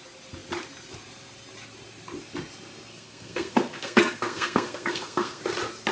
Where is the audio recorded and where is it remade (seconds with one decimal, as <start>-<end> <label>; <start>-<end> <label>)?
0.0-2.9 recorded; 2.9-5.4 remade; 5.4-5.9 recorded